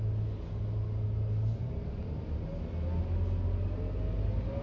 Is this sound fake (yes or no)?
no